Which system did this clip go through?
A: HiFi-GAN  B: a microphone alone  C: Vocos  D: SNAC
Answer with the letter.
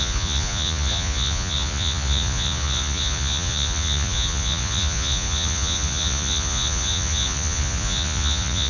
C